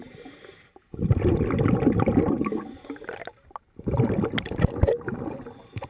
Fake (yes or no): no